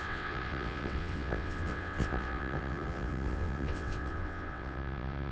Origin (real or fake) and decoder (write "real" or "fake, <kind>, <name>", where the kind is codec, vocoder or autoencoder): fake, vocoder, WaveNeXt